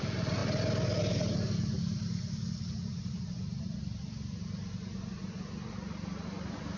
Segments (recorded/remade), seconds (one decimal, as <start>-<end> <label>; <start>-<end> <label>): 0.0-6.8 recorded